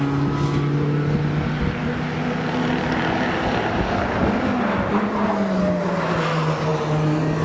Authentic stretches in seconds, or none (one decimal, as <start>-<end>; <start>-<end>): 0.0-7.4